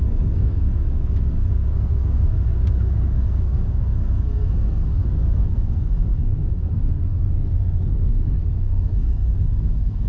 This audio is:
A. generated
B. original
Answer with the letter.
A